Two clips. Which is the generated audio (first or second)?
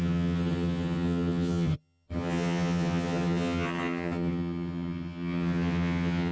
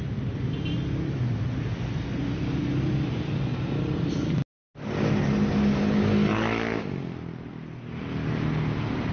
first